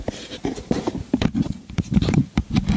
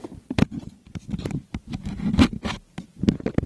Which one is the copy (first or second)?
first